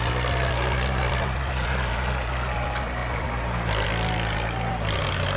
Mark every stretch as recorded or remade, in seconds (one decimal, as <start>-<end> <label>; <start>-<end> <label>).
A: 0.0-5.4 recorded